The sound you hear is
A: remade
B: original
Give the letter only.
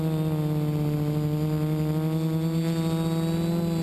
B